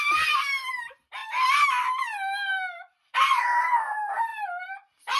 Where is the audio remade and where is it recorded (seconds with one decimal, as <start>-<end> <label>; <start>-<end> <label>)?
0.0-1.2 remade; 1.2-2.5 recorded; 2.5-5.2 remade